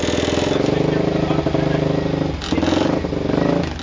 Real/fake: real